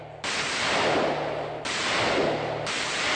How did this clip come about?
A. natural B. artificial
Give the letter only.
A